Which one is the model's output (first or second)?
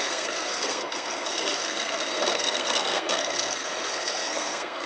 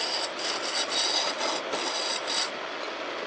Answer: first